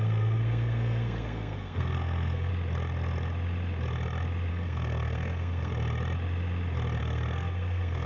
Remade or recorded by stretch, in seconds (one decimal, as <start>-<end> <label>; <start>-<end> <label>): 0.0-2.5 remade; 2.5-4.5 recorded; 4.5-5.7 remade; 5.7-7.0 recorded; 7.0-8.1 remade